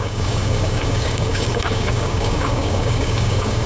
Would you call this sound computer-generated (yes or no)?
yes